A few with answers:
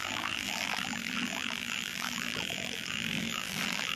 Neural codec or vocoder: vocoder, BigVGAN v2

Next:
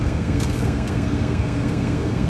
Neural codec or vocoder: codec, SNAC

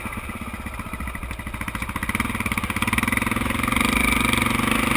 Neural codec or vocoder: none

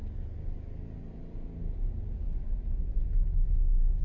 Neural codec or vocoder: none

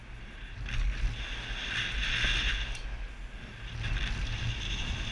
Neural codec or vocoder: none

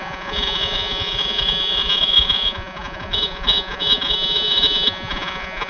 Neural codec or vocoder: vocoder, Vocos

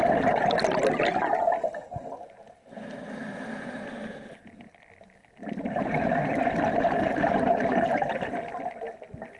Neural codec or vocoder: none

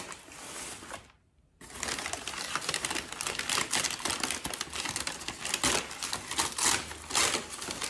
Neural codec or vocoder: none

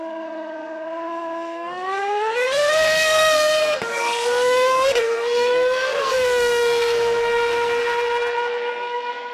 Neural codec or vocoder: codec, SNAC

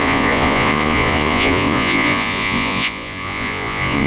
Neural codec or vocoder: vocoder, Vocos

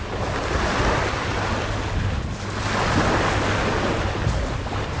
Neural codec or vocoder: none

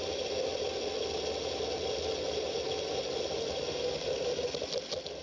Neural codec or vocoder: none